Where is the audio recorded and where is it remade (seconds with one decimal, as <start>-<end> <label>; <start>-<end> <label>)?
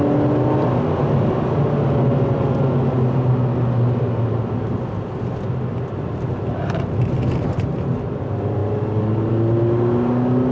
0.0-10.5 recorded